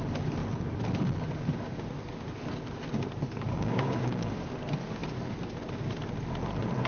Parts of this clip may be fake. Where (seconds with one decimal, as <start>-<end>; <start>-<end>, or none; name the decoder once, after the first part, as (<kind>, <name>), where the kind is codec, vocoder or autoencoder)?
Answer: 3.5-4.5 (codec, DAC)